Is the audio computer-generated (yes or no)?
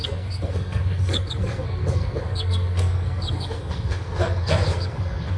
yes